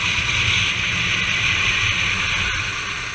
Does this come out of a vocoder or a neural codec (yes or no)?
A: no